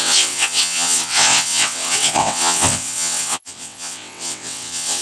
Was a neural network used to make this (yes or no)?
yes